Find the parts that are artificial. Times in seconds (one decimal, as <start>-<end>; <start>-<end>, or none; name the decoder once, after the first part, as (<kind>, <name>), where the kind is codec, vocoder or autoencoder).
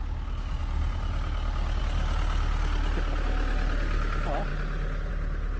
none